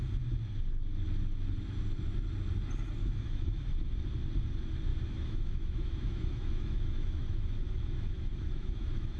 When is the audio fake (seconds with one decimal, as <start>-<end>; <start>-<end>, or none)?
3.0-3.6; 4.9-9.2